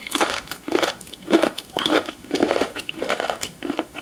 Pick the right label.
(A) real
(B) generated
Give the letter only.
B